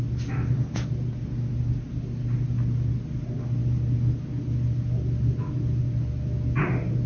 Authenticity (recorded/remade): recorded